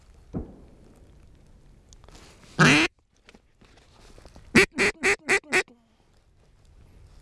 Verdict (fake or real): real